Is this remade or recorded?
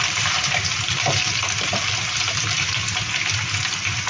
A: recorded